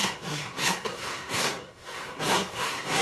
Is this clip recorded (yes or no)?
no